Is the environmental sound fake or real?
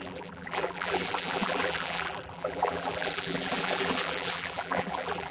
fake